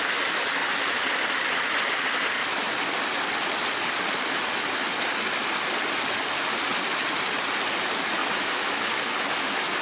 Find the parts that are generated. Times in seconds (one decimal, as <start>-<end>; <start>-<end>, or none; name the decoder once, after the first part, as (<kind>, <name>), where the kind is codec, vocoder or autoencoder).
8.2-8.9 (autoencoder, DAC-VAE)